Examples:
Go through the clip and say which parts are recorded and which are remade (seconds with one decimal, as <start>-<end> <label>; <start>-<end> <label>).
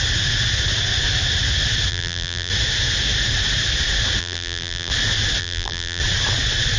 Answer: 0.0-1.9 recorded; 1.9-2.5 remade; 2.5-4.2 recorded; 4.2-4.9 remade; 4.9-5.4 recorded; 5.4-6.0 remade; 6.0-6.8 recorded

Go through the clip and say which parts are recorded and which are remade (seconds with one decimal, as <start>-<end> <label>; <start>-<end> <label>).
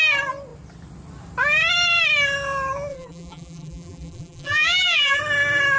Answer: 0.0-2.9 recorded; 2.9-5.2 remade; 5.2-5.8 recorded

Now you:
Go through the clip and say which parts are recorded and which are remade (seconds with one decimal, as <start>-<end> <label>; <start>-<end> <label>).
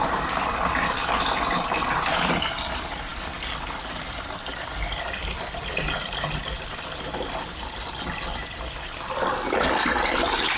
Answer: 0.0-3.1 remade; 3.1-3.9 recorded; 3.9-10.6 remade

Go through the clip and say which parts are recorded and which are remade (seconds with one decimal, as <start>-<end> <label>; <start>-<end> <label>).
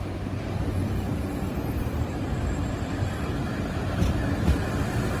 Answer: 0.0-1.1 recorded; 1.1-4.2 remade; 4.2-5.2 recorded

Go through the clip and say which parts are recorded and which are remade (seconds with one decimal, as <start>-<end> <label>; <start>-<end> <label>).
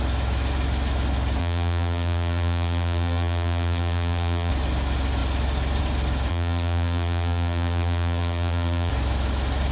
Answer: 0.0-1.4 recorded; 1.4-4.5 remade; 4.5-6.3 recorded; 6.3-8.9 remade; 8.9-9.7 recorded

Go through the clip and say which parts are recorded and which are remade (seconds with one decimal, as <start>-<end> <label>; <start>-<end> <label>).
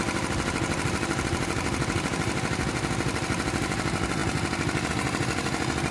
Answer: 0.0-4.2 remade; 4.2-4.9 recorded; 4.9-5.9 remade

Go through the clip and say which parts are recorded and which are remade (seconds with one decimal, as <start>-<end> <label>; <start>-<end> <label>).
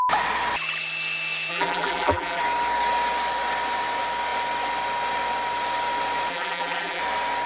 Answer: 0.0-1.5 recorded; 1.5-2.4 remade; 2.4-6.3 recorded; 6.3-7.0 remade; 7.0-7.5 recorded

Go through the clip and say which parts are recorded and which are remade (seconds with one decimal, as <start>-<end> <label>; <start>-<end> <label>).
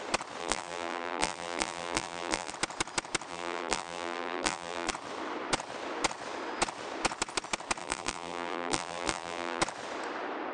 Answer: 0.0-0.4 recorded; 0.4-2.5 remade; 2.5-3.3 recorded; 3.3-4.9 remade; 4.9-7.8 recorded; 7.8-9.6 remade; 9.6-10.5 recorded